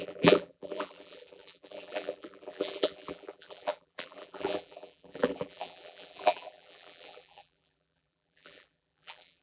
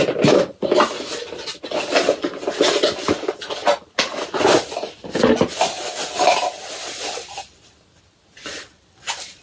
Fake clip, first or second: first